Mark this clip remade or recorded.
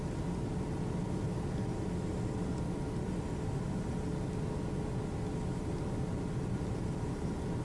recorded